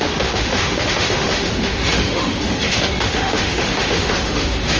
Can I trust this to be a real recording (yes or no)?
no